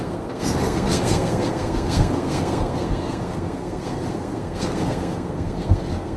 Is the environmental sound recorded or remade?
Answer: remade